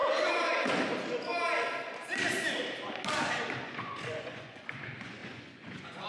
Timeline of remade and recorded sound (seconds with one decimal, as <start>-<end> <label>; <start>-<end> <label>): 0.0-3.6 recorded; 3.6-6.1 remade